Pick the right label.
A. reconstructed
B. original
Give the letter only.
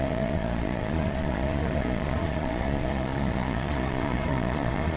A